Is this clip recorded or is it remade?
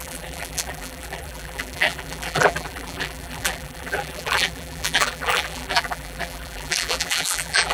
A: remade